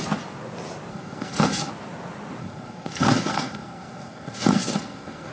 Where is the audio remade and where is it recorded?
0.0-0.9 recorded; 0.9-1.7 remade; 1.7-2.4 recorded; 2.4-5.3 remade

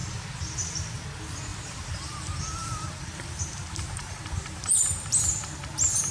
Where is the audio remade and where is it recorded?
0.0-1.5 recorded; 1.5-5.2 remade; 5.2-6.1 recorded